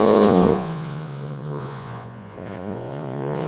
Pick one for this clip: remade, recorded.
remade